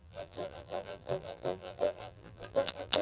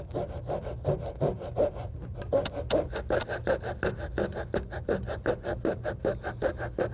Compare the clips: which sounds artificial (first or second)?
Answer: first